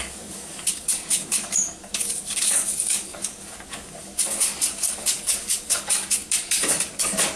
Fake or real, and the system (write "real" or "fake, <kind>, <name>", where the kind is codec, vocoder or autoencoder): fake, codec, DAC